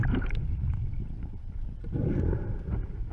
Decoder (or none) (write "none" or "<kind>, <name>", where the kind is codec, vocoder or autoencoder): none